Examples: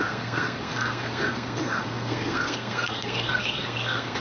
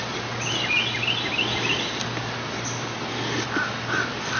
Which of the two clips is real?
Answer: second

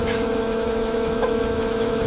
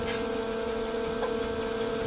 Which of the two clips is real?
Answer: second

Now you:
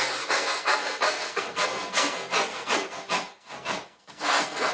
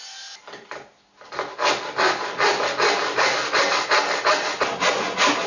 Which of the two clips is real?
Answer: second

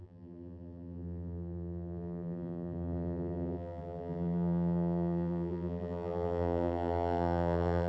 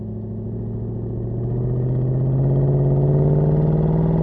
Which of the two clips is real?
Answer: second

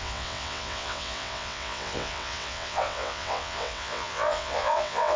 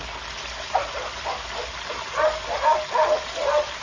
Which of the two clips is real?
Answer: second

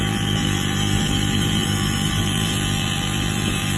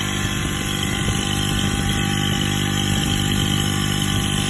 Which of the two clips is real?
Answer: second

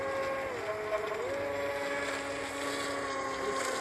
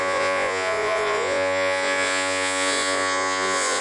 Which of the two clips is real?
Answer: first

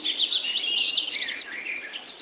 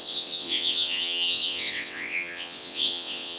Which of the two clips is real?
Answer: first